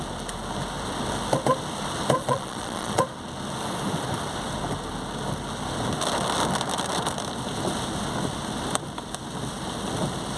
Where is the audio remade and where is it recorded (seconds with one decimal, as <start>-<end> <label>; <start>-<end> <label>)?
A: 0.0-2.2 recorded; 2.2-3.0 remade; 3.0-10.4 recorded